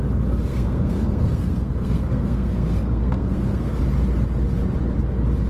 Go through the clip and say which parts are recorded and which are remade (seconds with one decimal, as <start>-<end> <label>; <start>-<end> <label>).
0.0-0.5 recorded; 0.5-3.8 remade; 3.8-5.5 recorded